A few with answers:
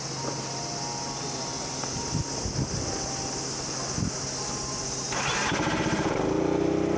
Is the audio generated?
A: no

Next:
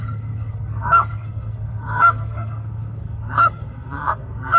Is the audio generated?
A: yes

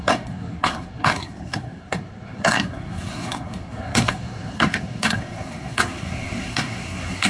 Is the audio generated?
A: yes